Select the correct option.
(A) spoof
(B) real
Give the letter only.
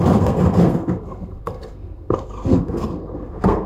A